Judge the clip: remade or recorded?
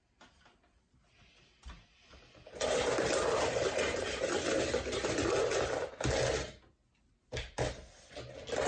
recorded